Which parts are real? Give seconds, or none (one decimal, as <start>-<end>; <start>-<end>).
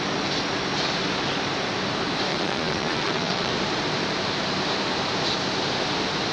0.0-2.3; 3.5-6.3